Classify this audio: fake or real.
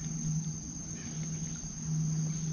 real